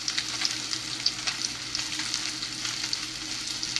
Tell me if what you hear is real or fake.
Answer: real